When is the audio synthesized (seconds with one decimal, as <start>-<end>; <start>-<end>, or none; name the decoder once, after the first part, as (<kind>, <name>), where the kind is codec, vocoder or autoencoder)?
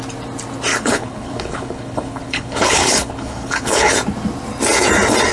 0.7-3.9 (codec, HILCodec)